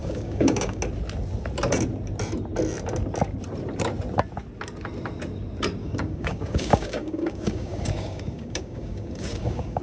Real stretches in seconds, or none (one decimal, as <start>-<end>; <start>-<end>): 0.8-5.8